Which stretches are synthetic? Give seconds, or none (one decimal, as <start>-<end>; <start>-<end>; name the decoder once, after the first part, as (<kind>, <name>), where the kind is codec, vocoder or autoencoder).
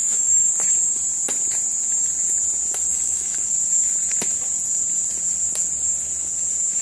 0.0-0.5 (autoencoder, DAC-VAE); 2.9-3.5